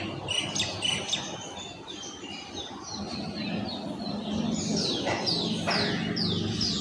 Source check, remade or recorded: recorded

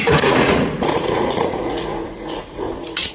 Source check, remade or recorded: remade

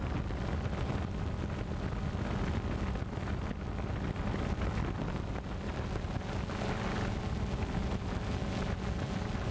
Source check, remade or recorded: recorded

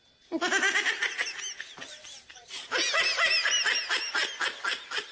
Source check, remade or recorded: recorded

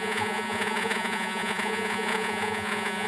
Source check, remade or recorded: remade